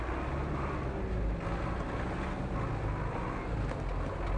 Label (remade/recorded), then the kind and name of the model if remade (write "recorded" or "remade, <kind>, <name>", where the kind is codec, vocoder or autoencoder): recorded